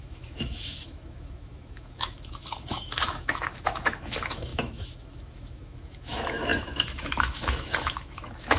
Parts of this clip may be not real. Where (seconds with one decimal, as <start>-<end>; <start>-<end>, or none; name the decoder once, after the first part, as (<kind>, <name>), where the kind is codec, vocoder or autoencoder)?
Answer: 0.0-8.6 (autoencoder, DAC-VAE)

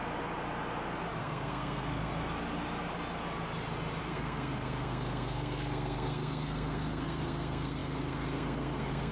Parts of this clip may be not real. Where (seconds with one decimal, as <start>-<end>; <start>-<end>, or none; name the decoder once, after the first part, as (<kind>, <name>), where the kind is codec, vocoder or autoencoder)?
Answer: 1.2-2.1 (codec, SNAC); 4.0-9.1

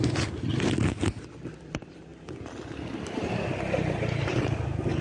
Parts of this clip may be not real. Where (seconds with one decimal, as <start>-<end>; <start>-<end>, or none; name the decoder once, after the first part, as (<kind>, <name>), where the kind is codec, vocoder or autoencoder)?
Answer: 0.0-0.5 (vocoder, BigVGAN v2); 1.3-2.1

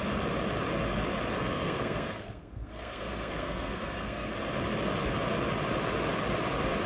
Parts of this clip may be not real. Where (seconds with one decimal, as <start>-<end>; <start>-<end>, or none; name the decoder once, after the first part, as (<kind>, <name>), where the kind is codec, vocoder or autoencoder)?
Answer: 1.4-4.3 (codec, SNAC)

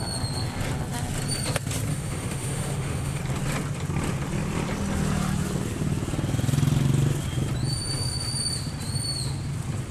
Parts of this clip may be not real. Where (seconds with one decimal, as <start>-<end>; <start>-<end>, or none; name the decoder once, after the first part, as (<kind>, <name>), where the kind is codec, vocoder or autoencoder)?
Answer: 1.9-3.2 (autoencoder, DAC-VAE)

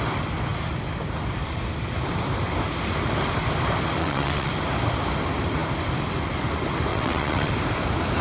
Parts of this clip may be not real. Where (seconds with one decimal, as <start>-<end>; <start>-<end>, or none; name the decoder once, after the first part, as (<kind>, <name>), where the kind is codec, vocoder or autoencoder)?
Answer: 4.0-4.5 (vocoder, WaveNeXt); 6.9-7.5